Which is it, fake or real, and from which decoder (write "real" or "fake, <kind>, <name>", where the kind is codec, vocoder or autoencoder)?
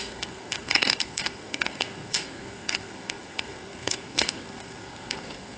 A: fake, codec, SNAC